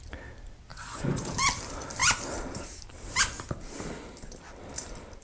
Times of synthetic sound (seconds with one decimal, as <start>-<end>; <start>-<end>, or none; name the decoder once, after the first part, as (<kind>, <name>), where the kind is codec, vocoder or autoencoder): 0.7-1.3 (vocoder, Vocos)